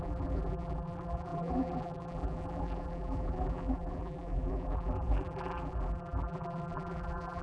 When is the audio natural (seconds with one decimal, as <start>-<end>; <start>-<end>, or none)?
none